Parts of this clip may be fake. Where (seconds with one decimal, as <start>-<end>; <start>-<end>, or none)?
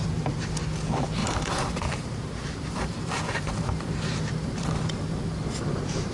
1.2-4.9